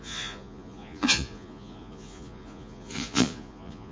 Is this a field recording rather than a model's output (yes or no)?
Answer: no